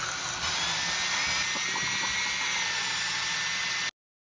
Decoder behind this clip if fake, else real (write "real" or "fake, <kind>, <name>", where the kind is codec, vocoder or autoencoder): real